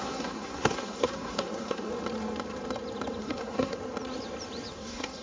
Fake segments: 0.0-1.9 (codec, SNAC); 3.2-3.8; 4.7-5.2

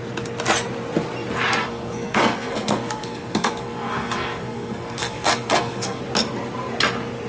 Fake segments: 1.6-6.0 (codec, SNAC)

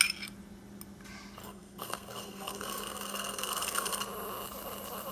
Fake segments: 1.4-4.0 (codec, SNAC)

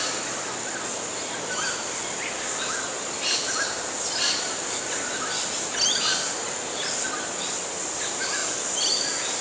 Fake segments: none